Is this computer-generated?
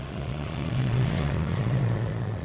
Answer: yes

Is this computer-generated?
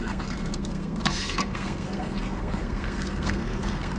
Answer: yes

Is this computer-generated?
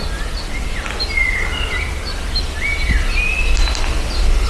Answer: no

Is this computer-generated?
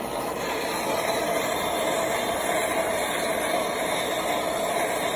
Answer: no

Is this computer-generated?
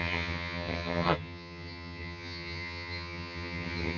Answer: yes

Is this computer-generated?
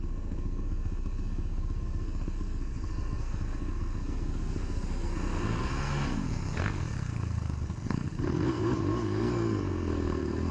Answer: yes